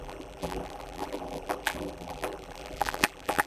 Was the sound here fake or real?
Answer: fake